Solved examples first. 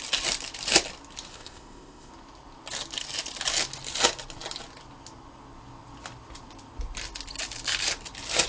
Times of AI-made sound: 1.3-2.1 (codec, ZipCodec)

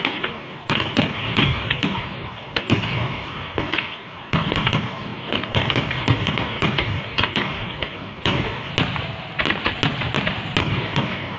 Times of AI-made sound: 0.0-8.7 (codec, DAC); 10.6-11.4

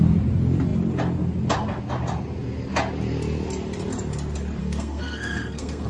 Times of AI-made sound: 4.6-5.9 (codec, SNAC)

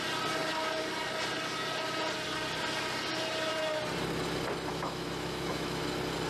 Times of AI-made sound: 4.7-5.8 (autoencoder, DAC-VAE)

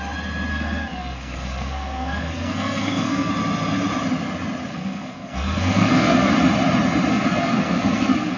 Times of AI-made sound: 0.5-3.3 (codec, SNAC); 4.7-6.3; 7.1-8.4

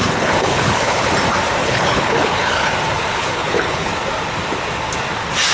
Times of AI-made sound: 0.0-1.1 (codec, HILCodec); 1.6-2.7; 3.1-3.9

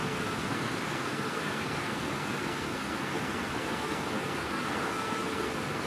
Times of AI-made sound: 0.0-5.9 (codec, SNAC)

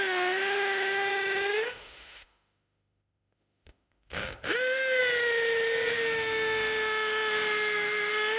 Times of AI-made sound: 0.0-1.1 (autoencoder, DAC-VAE); 1.7-5.0; 5.9-8.4